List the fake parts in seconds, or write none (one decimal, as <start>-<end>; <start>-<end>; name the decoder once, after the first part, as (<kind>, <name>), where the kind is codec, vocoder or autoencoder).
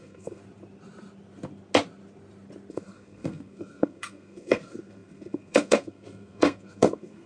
0.0-0.4 (codec, SNAC); 2.7-7.3